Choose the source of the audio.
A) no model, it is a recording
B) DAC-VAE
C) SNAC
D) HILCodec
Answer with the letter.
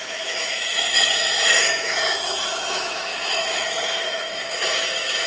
B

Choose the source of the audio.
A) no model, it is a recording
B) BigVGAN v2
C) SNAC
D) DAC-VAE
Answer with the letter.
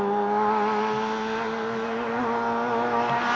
A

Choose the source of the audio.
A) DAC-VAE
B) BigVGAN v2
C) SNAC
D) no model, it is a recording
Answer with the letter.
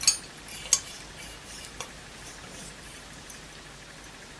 D